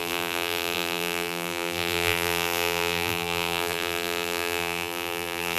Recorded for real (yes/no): no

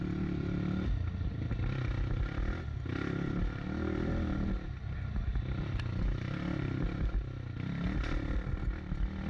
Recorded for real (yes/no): yes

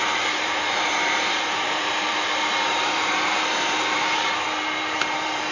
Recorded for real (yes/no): no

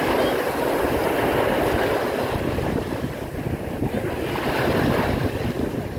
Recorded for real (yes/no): yes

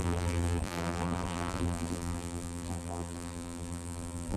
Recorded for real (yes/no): no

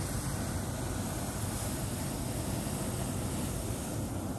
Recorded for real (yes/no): yes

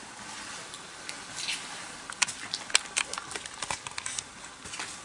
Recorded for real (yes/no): yes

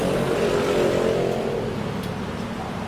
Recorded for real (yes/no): yes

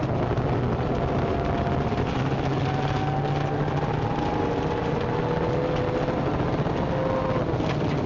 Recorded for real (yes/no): yes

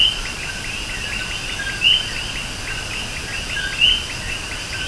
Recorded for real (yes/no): yes